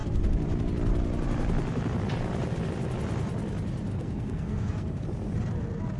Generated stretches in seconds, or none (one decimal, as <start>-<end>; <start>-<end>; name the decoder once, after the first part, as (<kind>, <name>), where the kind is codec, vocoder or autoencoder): 3.9-5.0 (codec, SNAC)